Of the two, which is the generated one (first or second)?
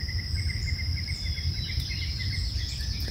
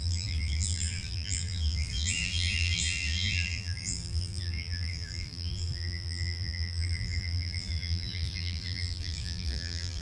second